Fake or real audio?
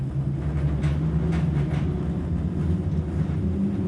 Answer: real